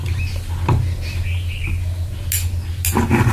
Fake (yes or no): no